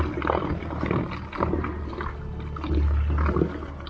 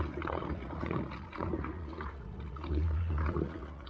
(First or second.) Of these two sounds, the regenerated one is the second